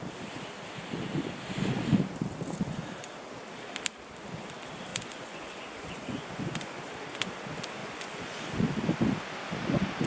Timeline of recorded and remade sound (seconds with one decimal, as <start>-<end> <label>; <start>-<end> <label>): 0.0-4.9 recorded; 4.9-6.8 remade; 6.8-7.8 recorded; 7.8-8.4 remade; 8.4-10.1 recorded